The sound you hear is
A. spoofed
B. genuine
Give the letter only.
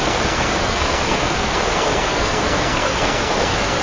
A